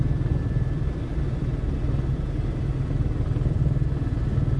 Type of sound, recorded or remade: remade